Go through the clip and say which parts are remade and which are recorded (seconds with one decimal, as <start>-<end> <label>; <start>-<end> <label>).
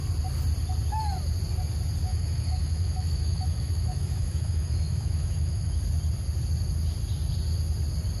0.0-2.1 recorded; 2.1-5.8 remade; 5.8-8.2 recorded